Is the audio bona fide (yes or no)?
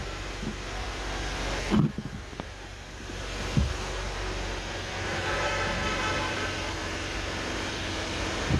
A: yes